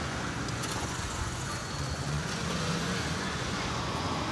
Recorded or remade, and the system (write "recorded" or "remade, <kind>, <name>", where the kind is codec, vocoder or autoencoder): remade, vocoder, Vocos